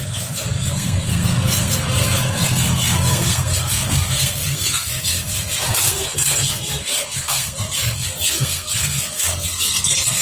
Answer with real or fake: fake